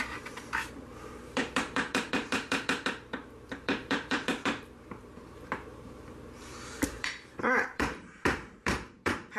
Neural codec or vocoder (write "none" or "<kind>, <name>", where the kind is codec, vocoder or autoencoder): vocoder, BigVGAN v2